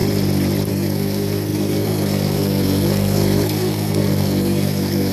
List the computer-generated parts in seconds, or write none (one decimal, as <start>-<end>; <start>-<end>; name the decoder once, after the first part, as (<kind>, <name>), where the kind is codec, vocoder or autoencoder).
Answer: 0.7-5.1 (codec, SNAC)